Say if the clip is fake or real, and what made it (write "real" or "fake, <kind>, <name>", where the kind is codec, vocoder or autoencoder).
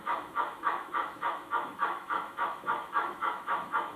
fake, autoencoder, DAC-VAE